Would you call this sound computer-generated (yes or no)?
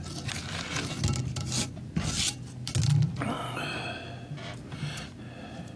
no